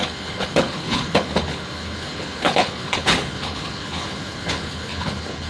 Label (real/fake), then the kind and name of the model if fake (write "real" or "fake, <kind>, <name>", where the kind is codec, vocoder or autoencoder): fake, codec, HILCodec